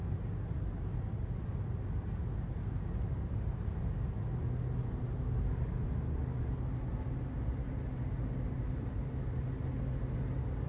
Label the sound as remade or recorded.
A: recorded